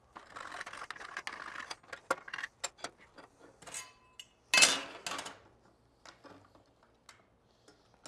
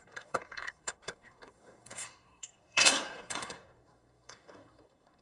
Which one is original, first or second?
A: first